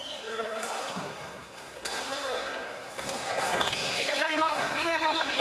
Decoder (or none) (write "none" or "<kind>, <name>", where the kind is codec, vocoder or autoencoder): codec, SNAC